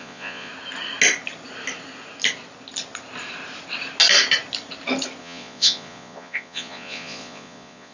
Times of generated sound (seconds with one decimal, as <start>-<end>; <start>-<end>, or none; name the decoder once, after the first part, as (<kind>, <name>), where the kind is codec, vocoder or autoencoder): 0.0-0.5 (vocoder, Vocos); 5.2-7.9